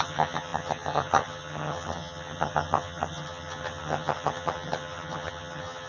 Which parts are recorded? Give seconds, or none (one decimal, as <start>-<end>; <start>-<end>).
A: none